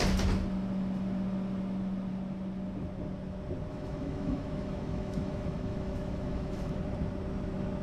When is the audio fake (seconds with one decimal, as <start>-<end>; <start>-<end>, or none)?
3.7-6.8